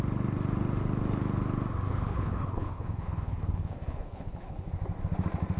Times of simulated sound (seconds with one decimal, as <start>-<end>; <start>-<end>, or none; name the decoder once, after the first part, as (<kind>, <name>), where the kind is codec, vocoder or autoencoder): 1.9-4.7 (codec, HILCodec)

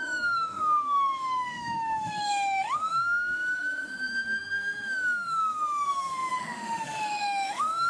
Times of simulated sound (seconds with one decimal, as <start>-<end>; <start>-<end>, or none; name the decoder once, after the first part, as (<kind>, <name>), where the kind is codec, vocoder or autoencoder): 0.0-7.9 (autoencoder, DAC-VAE)

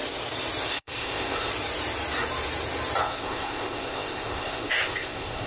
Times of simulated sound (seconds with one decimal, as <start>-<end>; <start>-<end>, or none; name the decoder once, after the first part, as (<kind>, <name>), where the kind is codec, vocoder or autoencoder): 0.7-1.5 (codec, ZipCodec); 3.0-5.5